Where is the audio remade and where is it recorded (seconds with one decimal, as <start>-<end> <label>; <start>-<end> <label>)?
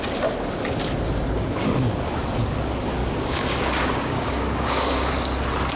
0.0-3.0 recorded; 3.0-5.1 remade; 5.1-5.8 recorded